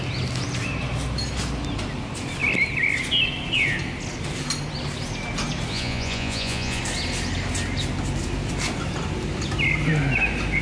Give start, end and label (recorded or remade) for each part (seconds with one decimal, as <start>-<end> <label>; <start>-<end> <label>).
0.0-5.7 recorded; 5.7-6.8 remade; 6.8-10.6 recorded